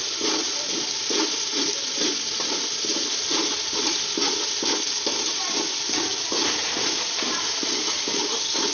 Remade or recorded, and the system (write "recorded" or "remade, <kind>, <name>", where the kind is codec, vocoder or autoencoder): recorded